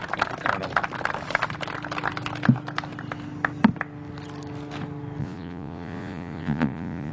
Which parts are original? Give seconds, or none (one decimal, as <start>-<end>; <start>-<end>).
0.0-5.2